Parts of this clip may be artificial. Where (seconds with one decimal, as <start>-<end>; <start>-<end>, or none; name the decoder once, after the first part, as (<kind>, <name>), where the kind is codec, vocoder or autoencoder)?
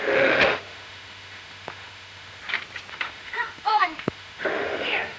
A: 0.0-2.4 (autoencoder, DAC-VAE); 2.9-5.2